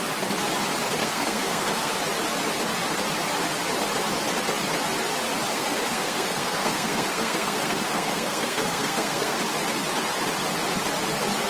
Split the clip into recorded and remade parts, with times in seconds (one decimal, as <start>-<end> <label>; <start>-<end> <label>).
0.0-1.0 recorded; 1.0-1.9 remade; 1.9-5.5 recorded; 5.5-9.4 remade; 9.4-11.5 recorded